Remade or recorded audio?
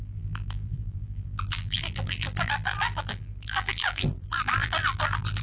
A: remade